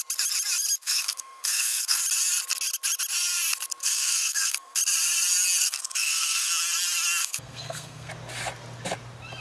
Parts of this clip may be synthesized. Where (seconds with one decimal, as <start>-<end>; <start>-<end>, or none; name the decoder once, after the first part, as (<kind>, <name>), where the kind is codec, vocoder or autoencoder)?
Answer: 0.8-2.0 (codec, SNAC); 3.8-4.8; 5.6-6.5; 7.2-8.1